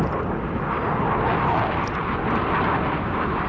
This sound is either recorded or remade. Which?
recorded